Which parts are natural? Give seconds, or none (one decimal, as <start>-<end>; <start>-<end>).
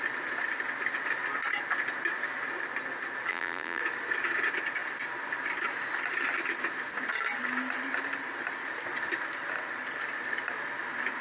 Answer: 0.0-3.3; 3.8-11.2